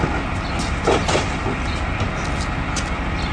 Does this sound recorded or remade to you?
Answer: recorded